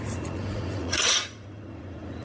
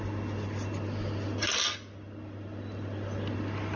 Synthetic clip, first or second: first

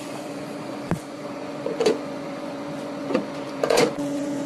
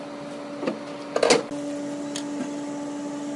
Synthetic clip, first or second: first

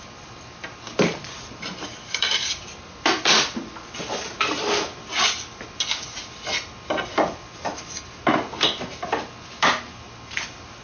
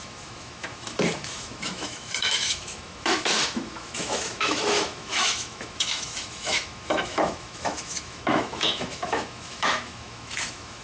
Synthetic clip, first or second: second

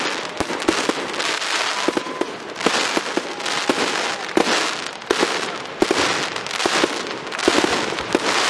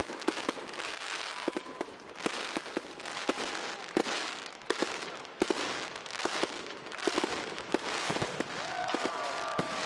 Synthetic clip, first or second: second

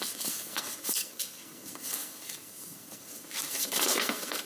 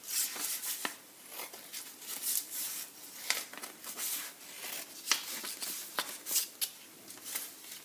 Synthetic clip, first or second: first